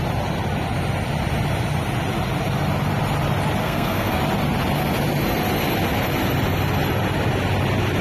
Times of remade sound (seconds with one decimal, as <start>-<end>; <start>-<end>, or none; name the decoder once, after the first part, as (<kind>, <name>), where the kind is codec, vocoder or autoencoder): 3.6-4.2 (codec, SNAC)

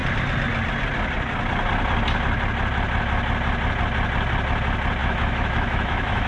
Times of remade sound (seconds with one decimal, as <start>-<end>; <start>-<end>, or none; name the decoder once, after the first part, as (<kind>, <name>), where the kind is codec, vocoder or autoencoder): 5.0-6.3 (autoencoder, DAC-VAE)

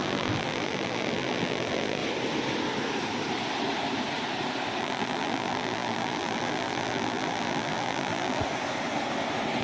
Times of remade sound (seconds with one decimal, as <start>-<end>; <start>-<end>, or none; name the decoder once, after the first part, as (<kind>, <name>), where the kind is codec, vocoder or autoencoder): 0.0-2.0 (vocoder, BigVGAN v2); 4.8-8.4

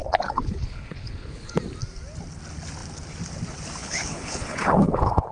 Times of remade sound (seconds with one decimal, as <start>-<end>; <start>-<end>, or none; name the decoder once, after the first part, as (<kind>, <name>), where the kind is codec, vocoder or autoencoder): 0.0-1.6 (codec, HILCodec); 3.8-5.3

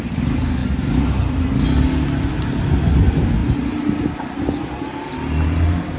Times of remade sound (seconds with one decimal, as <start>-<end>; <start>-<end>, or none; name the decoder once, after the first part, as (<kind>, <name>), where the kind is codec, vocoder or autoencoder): none

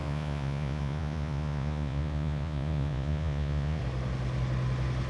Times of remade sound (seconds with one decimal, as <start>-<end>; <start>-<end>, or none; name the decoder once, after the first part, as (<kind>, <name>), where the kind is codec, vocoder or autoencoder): 0.0-3.8 (vocoder, Vocos)

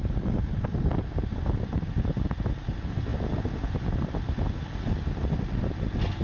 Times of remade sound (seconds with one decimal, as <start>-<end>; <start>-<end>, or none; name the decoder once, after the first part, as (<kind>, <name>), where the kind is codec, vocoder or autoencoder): none